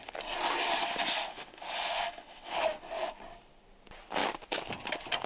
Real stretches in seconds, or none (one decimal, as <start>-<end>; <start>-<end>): 0.0-1.3; 2.8-5.3